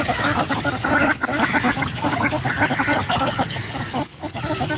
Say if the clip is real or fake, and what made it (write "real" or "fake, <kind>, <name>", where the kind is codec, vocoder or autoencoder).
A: fake, codec, DAC